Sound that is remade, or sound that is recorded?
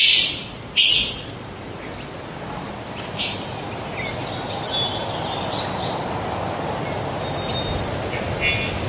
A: recorded